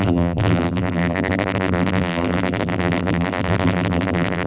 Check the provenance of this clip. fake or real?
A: fake